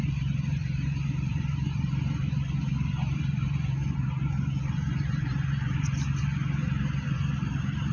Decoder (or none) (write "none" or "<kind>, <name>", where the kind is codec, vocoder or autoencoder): vocoder, BigVGAN v2